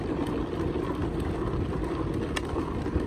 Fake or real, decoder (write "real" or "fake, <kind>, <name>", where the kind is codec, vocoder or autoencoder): real